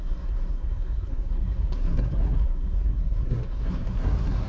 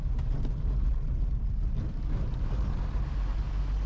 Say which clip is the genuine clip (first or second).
second